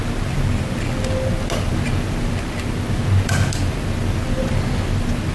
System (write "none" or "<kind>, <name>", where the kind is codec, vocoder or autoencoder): none